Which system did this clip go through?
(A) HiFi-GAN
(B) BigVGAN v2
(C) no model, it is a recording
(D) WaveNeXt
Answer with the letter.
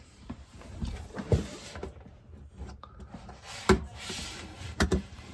B